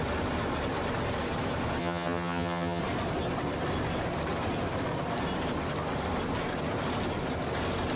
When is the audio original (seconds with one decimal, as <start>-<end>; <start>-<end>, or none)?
0.0-1.8; 2.8-8.0